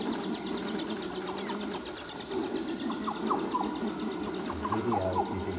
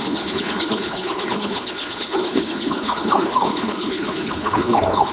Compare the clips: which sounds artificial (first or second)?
second